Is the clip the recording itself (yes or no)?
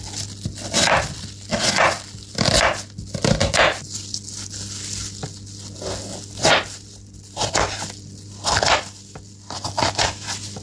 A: yes